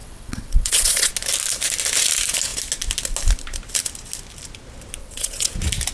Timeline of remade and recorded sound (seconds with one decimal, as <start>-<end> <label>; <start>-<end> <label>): 0.0-1.1 remade; 1.1-5.0 recorded; 5.0-5.5 remade; 5.5-5.9 recorded